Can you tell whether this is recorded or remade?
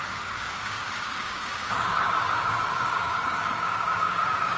remade